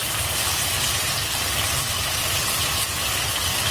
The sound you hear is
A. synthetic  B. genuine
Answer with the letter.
B